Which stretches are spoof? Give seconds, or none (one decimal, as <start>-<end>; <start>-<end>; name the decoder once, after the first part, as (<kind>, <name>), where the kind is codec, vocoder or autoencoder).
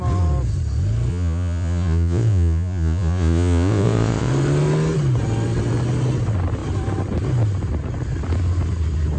1.1-4.3 (vocoder, Vocos)